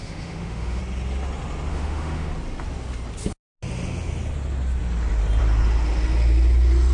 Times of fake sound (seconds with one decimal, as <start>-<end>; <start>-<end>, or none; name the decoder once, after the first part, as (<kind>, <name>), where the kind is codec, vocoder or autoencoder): 0.0-0.8 (autoencoder, DAC-VAE); 1.7-2.3